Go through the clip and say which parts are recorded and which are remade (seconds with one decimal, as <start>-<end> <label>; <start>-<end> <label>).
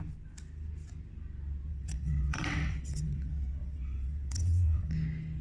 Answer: 0.0-1.7 recorded; 1.7-4.9 remade; 4.9-5.4 recorded